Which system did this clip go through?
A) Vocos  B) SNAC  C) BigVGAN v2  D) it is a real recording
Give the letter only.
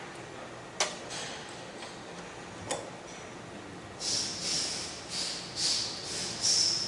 D